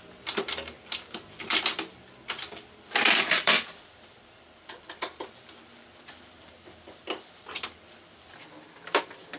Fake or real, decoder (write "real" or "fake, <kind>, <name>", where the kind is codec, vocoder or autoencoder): fake, vocoder, BigVGAN v2